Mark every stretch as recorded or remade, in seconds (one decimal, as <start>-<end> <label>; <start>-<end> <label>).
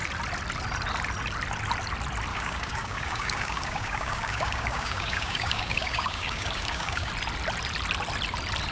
0.0-2.3 recorded; 2.3-7.1 remade; 7.1-8.7 recorded